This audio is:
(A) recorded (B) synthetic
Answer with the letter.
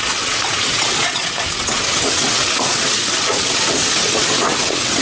B